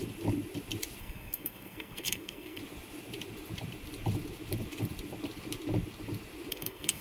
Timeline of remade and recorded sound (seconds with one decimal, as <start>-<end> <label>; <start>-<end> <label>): 0.0-1.0 recorded; 1.0-2.6 remade; 2.6-6.5 recorded; 6.5-7.0 remade